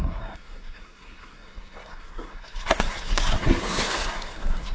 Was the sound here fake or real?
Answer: fake